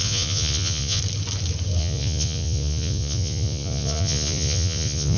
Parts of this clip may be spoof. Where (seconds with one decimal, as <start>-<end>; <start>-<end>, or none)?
0.0-1.0; 1.8-5.2